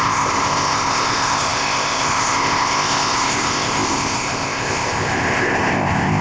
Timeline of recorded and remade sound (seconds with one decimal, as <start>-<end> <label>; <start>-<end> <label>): 0.0-6.2 remade